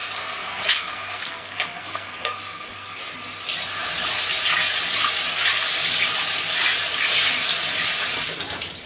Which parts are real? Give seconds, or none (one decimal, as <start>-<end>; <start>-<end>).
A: 3.0-8.9